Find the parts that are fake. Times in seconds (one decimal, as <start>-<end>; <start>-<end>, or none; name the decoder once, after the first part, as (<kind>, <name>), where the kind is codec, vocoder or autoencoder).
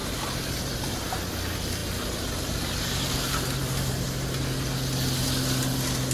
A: none